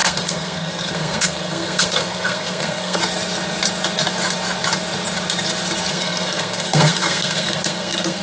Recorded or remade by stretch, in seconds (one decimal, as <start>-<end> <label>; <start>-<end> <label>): 0.0-3.0 remade; 3.0-5.9 recorded; 5.9-8.2 remade